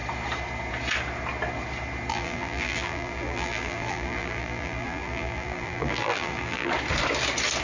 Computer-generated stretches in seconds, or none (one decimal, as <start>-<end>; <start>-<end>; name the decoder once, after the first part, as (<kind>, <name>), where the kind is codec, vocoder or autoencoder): 2.1-6.7 (vocoder, BigVGAN v2)